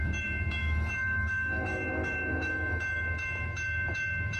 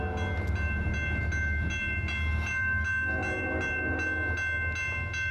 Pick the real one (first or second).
second